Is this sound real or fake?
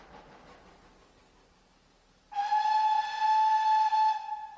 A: real